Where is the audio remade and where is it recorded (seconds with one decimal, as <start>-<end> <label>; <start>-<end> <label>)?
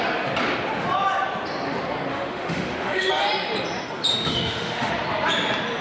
0.0-2.1 recorded; 2.1-3.1 remade; 3.1-4.1 recorded; 4.1-4.9 remade; 4.9-5.8 recorded